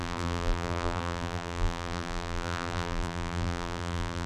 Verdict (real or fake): fake